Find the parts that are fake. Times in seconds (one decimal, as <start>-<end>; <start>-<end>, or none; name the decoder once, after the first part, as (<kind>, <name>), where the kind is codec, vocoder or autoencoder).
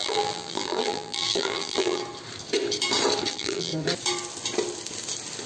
0.0-2.0 (vocoder, BigVGAN v2); 3.3-3.7